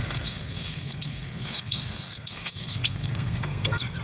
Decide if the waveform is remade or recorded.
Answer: remade